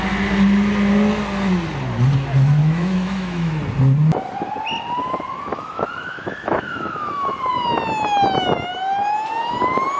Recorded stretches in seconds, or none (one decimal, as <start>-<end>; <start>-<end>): 0.0-2.6; 3.6-5.5; 7.3-10.0

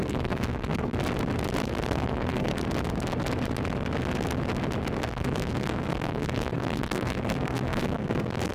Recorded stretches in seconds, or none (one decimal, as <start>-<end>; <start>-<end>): 1.0-1.6; 2.5-5.0

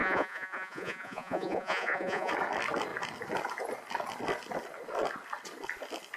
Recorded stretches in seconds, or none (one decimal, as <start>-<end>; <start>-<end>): 2.3-6.2

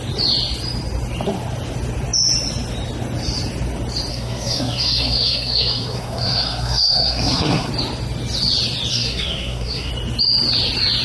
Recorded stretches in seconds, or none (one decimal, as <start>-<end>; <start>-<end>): 0.0-4.1; 7.7-8.9; 9.9-11.0